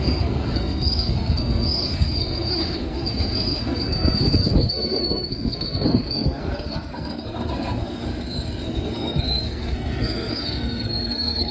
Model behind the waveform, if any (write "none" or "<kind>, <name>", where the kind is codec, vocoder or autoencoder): codec, SNAC